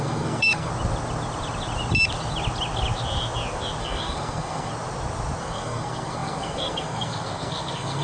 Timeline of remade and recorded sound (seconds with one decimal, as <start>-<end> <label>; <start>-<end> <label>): 0.0-0.7 remade; 0.7-3.8 recorded; 3.8-4.7 remade; 4.7-5.4 recorded; 5.4-8.0 remade